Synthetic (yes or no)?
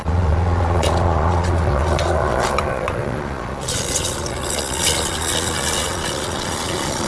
yes